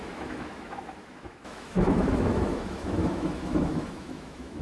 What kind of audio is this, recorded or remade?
remade